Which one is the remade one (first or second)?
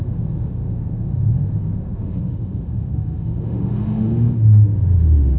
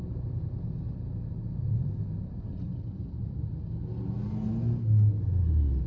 first